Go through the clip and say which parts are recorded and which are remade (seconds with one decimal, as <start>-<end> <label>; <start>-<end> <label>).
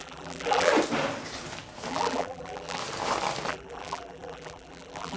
0.0-0.7 remade; 0.7-1.9 recorded; 1.9-2.8 remade; 2.8-3.5 recorded; 3.5-5.2 remade